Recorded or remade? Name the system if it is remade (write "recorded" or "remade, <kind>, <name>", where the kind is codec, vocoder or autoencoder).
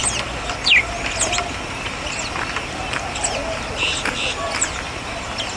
recorded